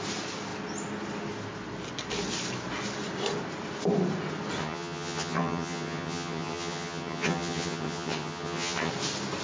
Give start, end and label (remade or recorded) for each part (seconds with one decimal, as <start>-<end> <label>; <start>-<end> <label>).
0.0-4.6 recorded; 4.6-8.9 remade; 8.9-9.4 recorded